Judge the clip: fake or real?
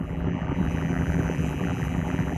fake